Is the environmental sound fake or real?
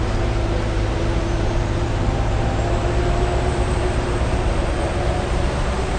fake